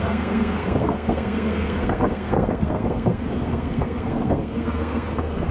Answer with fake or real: fake